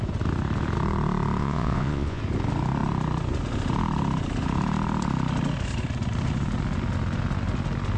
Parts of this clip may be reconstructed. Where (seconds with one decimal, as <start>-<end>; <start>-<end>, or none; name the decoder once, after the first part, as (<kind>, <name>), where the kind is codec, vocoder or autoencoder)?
1.4-2.2 (vocoder, Vocos)

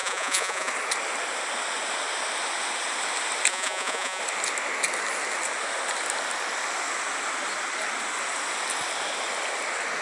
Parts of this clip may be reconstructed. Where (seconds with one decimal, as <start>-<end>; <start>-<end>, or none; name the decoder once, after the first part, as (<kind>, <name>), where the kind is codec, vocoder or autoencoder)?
0.0-0.7 (vocoder, Vocos); 3.5-4.2

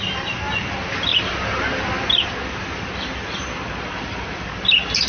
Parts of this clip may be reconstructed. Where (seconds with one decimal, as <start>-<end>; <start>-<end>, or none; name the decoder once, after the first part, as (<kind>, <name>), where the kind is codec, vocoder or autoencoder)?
none

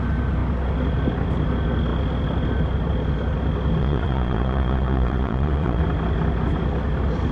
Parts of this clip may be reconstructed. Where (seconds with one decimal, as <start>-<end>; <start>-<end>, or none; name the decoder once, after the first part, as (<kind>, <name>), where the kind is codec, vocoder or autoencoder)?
3.8-5.8 (vocoder, Vocos)